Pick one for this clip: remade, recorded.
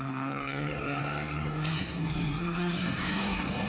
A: remade